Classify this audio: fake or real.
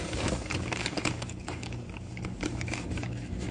fake